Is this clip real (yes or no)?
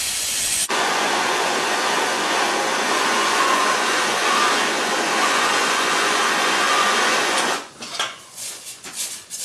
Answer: no